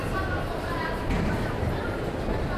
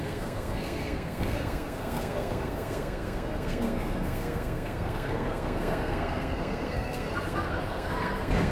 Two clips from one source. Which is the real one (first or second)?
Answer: first